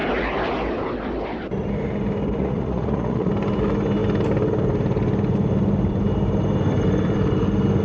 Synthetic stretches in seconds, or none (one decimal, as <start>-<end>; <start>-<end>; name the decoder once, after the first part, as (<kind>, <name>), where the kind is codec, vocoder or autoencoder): 2.4-3.3 (vocoder, Vocos)